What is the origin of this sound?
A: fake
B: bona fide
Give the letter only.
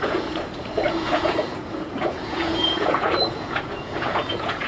A